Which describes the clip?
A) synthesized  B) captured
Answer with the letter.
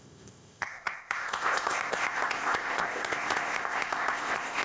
A